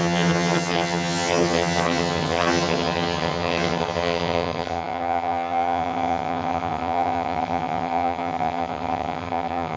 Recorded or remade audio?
remade